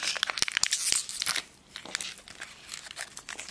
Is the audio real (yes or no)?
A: yes